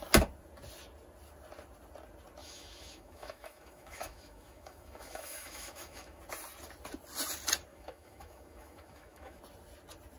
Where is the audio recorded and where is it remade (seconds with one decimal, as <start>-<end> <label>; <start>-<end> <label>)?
0.0-2.4 recorded; 2.4-6.2 remade; 6.2-7.7 recorded; 7.7-9.4 remade; 9.4-10.2 recorded